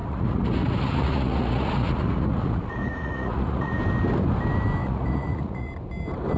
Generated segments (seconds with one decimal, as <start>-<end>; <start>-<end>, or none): 0.0-3.8; 4.8-5.7